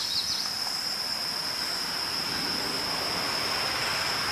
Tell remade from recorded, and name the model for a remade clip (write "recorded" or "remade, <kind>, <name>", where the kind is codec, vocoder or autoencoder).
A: recorded